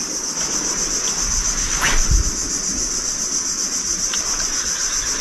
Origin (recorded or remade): recorded